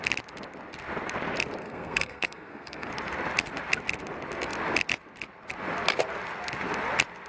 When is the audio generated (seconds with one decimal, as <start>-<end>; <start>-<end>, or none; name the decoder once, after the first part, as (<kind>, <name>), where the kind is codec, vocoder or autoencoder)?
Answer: 1.6-2.9 (codec, SNAC)